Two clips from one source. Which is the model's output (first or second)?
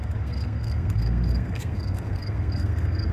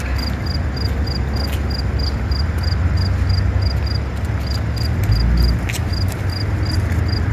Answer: first